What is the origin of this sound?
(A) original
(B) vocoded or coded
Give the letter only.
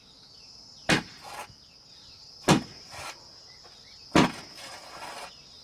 A